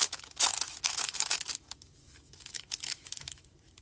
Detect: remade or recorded remade